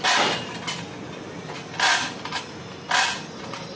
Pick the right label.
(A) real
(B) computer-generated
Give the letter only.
A